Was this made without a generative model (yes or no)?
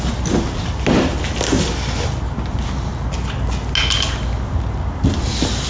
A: yes